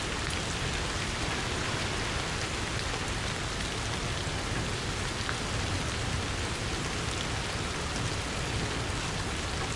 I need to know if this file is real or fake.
real